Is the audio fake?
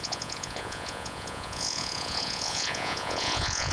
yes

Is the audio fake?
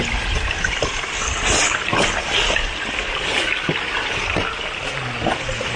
no